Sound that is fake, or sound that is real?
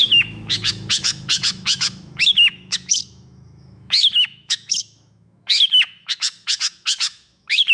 fake